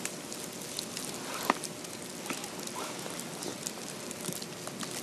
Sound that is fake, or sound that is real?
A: real